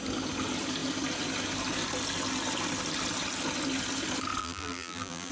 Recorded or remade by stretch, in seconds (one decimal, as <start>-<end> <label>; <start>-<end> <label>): 0.0-4.4 recorded; 4.4-5.3 remade